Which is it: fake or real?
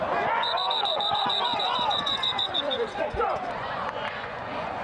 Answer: fake